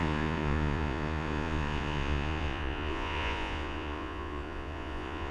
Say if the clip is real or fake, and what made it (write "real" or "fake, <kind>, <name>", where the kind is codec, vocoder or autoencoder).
fake, vocoder, Vocos